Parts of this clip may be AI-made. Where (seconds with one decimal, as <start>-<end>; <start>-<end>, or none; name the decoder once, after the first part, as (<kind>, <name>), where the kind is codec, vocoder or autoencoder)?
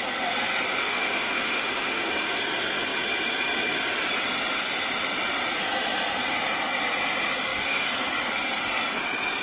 0.8-2.1 (autoencoder, DAC-VAE)